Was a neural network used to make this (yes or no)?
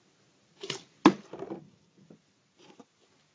no